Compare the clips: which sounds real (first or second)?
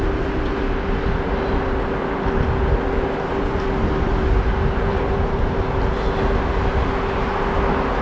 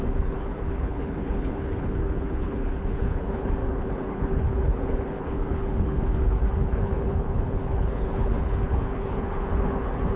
first